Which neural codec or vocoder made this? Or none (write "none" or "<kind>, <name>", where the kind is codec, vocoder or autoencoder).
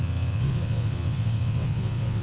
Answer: vocoder, WaveNeXt